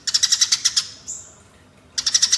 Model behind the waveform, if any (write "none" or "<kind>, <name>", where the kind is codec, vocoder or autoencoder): none